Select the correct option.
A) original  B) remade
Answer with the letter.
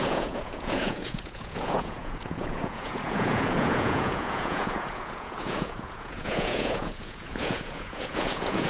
B